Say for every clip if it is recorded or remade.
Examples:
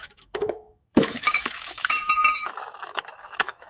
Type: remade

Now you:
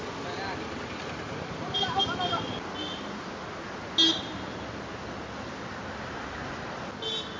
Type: recorded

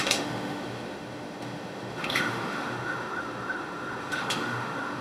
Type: remade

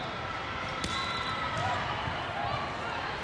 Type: recorded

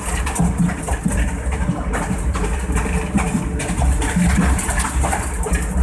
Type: recorded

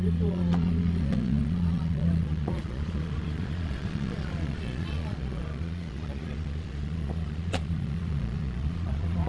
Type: remade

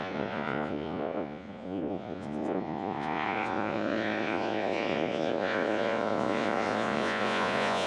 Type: remade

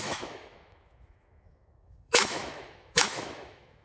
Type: remade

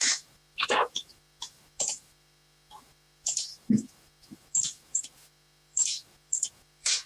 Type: remade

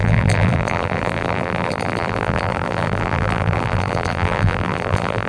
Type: remade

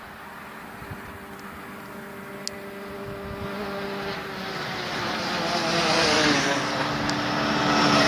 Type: recorded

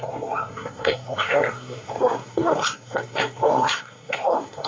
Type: remade